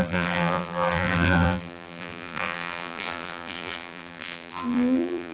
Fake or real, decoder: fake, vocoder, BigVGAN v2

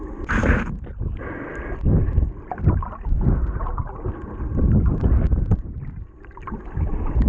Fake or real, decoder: real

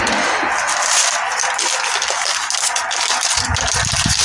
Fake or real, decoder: real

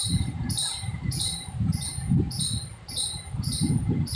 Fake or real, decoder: fake, vocoder, BigVGAN v2